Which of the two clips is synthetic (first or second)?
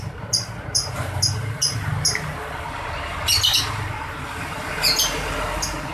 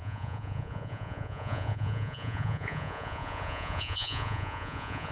second